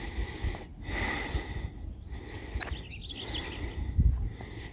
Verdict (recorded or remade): recorded